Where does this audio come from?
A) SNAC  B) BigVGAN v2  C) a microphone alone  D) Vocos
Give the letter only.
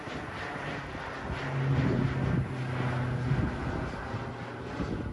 C